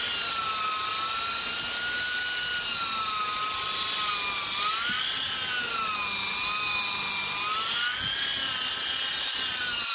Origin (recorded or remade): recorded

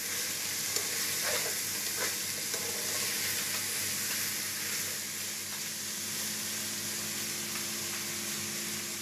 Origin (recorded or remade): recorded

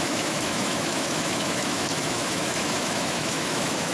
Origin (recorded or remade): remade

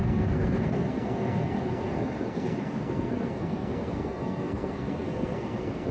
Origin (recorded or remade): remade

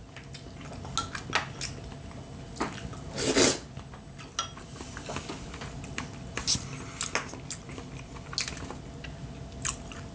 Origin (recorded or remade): recorded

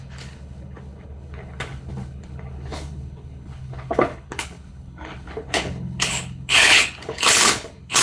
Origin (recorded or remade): remade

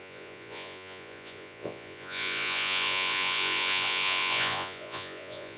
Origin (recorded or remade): remade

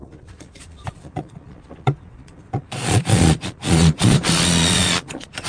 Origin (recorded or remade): remade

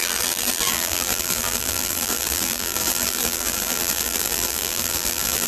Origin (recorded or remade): remade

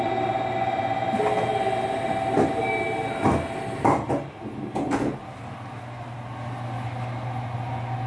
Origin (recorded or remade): recorded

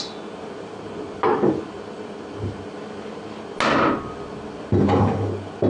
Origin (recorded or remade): recorded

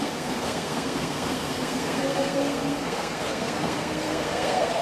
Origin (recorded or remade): remade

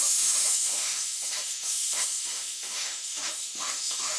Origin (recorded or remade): remade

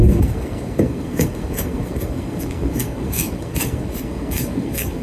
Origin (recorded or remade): remade